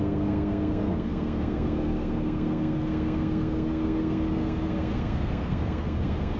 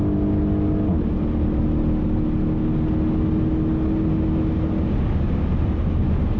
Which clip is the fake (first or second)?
first